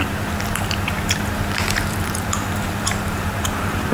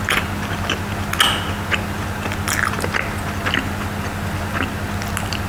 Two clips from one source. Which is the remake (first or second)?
first